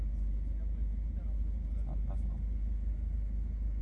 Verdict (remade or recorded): recorded